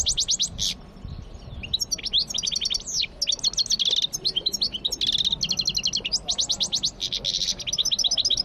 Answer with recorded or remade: recorded